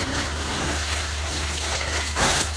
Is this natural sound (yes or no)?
no